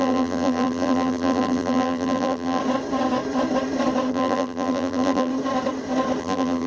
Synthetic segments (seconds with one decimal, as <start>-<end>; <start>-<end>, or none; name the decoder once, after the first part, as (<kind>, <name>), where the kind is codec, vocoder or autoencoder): 0.0-2.6 (vocoder, BigVGAN v2); 4.1-5.3; 6.2-6.7